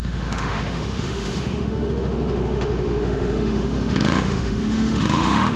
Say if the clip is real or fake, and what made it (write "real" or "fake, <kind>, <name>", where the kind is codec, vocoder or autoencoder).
fake, autoencoder, DAC-VAE